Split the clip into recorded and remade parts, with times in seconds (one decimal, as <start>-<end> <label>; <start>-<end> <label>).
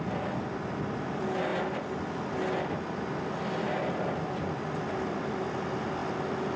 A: 0.0-6.6 recorded